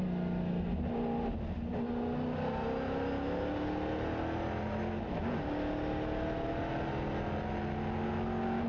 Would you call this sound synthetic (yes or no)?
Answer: no